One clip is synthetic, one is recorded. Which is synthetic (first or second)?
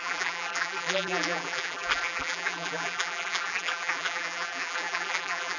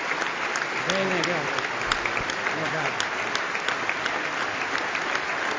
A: first